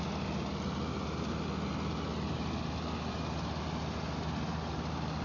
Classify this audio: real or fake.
real